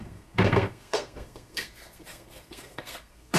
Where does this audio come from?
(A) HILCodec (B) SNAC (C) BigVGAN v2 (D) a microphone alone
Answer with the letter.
B